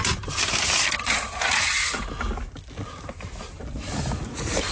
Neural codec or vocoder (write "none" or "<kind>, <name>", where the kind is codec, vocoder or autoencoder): none